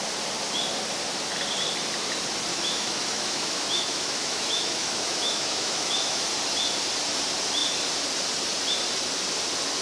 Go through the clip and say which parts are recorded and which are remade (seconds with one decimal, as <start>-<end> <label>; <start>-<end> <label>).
0.0-2.5 recorded; 2.5-6.2 remade; 6.2-9.8 recorded